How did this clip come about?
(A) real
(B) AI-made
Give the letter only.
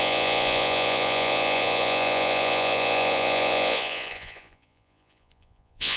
B